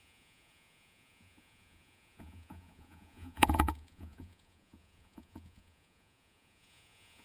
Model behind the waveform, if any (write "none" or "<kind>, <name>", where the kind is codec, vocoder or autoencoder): vocoder, Vocos